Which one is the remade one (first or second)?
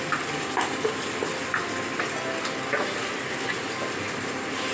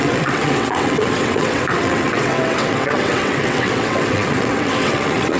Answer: second